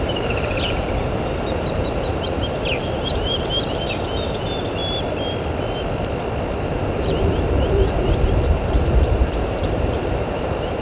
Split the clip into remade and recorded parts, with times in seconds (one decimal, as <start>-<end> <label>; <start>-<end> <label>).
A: 0.0-4.8 remade; 4.8-6.6 recorded; 6.6-10.8 remade